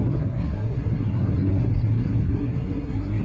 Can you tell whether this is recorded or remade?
remade